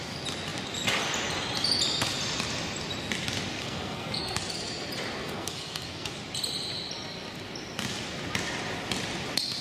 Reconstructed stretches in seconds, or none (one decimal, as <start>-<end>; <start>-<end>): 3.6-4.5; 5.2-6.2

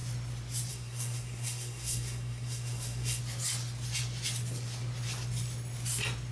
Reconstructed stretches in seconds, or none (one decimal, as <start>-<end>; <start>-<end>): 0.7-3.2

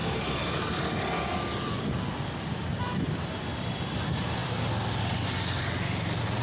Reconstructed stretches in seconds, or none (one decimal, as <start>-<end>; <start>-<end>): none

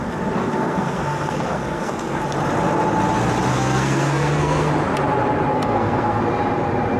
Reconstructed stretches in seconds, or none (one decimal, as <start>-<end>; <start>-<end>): 0.4-2.2; 3.5-4.7; 5.5-6.2

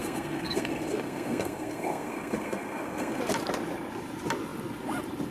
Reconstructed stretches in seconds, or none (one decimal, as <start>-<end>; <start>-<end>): 0.0-3.2